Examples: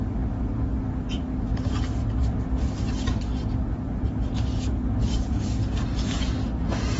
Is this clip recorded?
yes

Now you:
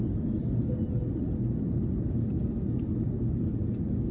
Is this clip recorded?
yes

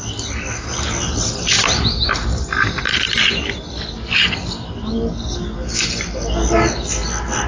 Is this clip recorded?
yes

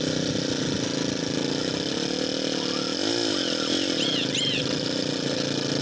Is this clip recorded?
yes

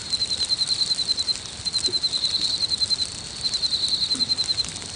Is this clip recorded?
no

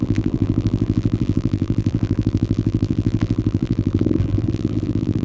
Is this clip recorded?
no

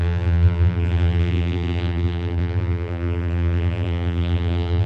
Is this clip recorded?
no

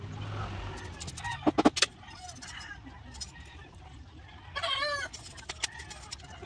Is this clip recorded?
yes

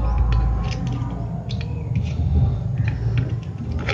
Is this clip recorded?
yes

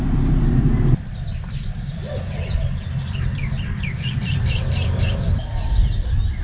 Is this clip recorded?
no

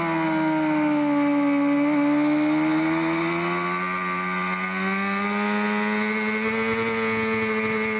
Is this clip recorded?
yes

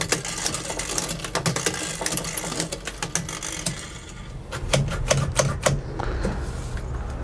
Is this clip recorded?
yes